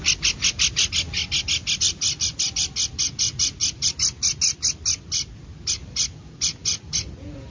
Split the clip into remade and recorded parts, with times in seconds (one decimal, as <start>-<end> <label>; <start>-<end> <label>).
0.0-7.5 recorded

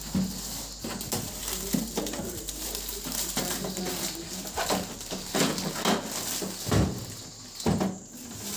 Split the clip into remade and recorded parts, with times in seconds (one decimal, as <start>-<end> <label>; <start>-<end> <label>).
0.0-1.4 recorded; 1.4-5.3 remade; 5.3-8.6 recorded

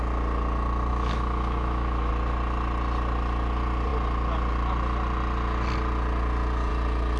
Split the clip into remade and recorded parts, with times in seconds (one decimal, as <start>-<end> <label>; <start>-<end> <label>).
0.0-0.9 recorded; 0.9-2.1 remade; 2.1-7.2 recorded

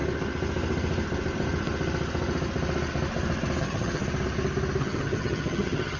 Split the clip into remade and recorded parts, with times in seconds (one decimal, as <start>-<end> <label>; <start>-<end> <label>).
0.0-3.6 recorded; 3.6-4.0 remade; 4.0-4.8 recorded; 4.8-6.0 remade

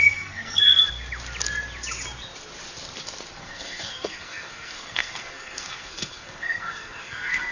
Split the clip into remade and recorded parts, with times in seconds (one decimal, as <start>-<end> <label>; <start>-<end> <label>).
0.0-0.8 remade; 0.8-3.4 recorded; 3.4-7.5 remade